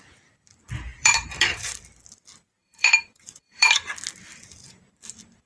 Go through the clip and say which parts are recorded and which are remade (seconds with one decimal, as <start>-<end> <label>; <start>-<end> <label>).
0.0-0.9 recorded; 0.9-1.8 remade; 1.8-2.6 recorded; 2.6-3.9 remade; 3.9-5.5 recorded